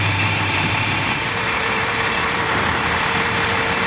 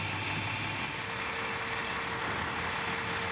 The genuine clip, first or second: second